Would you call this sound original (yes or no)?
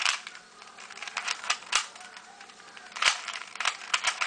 no